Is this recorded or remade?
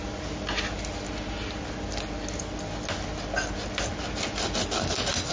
recorded